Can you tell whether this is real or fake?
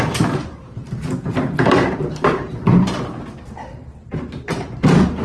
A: fake